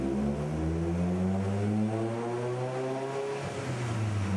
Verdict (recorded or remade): recorded